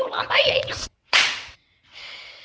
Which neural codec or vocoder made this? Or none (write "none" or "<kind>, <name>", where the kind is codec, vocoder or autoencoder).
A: vocoder, WaveNeXt